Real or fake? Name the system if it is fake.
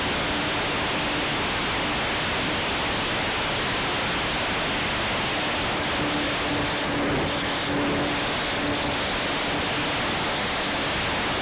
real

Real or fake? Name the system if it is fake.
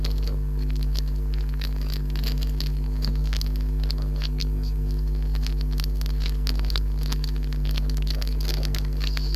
fake, codec, SNAC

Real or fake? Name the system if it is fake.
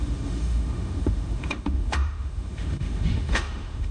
fake, autoencoder, DAC-VAE